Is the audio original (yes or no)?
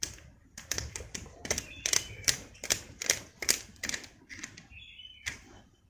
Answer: no